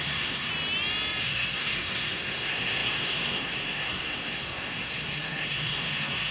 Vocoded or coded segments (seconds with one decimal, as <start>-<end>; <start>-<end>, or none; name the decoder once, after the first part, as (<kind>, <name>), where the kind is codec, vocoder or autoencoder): 0.0-0.5 (codec, SNAC); 1.2-6.3